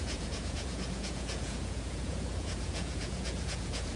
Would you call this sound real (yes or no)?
no